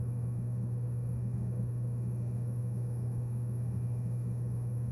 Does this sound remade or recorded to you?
remade